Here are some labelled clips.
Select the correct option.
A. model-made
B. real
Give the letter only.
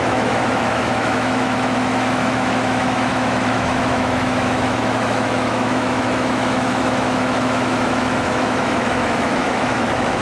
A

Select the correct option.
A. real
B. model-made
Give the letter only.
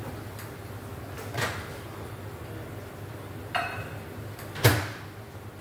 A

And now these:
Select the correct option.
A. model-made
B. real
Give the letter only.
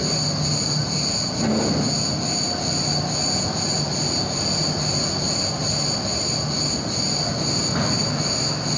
B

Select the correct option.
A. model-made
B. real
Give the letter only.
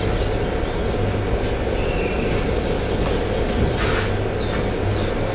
B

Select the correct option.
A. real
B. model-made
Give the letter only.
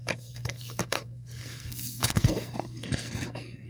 B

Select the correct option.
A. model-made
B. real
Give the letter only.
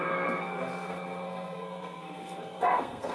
A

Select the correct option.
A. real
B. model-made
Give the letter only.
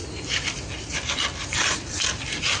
A